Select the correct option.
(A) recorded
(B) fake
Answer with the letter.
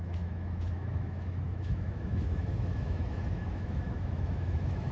B